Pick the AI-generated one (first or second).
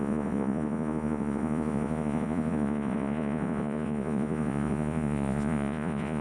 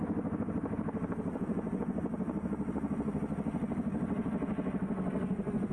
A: first